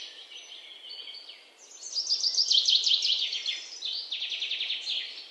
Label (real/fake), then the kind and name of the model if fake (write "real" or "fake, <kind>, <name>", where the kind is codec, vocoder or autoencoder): real